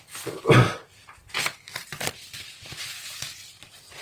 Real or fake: real